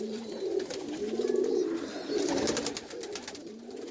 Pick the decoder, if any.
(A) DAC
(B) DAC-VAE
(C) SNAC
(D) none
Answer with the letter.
D